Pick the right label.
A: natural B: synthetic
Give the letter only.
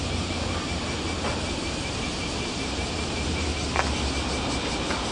A